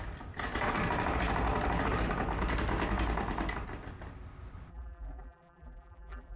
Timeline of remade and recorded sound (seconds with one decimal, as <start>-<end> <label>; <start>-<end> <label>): 0.0-4.7 recorded; 4.7-6.4 remade